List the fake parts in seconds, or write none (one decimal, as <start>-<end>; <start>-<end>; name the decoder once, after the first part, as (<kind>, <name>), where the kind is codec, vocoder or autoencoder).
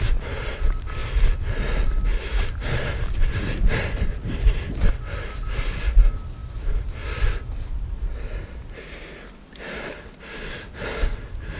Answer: none